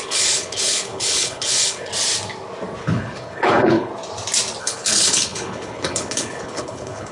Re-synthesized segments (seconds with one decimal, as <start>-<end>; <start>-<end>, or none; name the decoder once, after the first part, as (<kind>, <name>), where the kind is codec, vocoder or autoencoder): 0.0-1.9 (codec, HILCodec); 2.8-3.9; 4.6-7.1